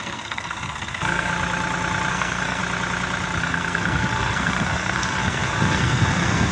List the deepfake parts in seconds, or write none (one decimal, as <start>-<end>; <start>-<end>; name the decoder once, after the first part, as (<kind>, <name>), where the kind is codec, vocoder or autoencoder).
0.0-1.3 (codec, SNAC); 2.1-2.6; 3.4-6.5